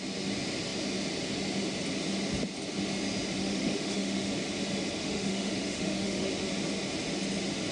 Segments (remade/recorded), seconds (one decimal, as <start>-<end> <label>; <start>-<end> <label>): 0.0-3.4 recorded; 3.4-4.3 remade; 4.3-5.0 recorded; 5.0-6.3 remade; 6.3-7.7 recorded